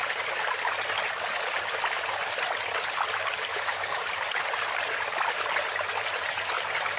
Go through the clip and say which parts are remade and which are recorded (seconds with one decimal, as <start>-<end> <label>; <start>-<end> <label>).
0.0-3.5 recorded; 3.5-4.0 remade; 4.0-7.0 recorded